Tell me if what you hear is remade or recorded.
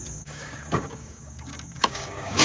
remade